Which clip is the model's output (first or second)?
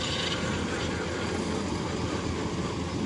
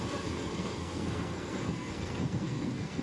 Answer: second